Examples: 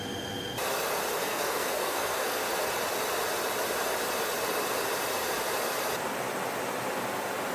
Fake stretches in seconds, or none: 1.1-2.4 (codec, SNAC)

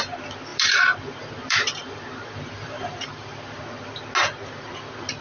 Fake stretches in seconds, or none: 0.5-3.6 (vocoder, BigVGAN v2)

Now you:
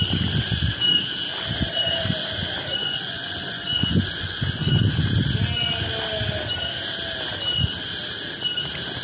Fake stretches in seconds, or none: 2.8-4.7 (vocoder, Vocos)

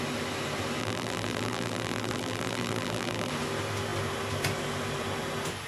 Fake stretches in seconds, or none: 0.8-3.3 (vocoder, BigVGAN v2)

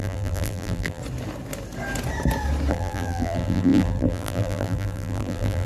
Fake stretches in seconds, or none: 0.0-1.0 (vocoder, BigVGAN v2); 2.7-5.7